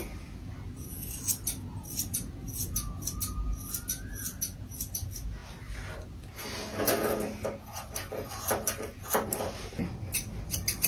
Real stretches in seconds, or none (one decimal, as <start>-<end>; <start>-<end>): 0.0-10.9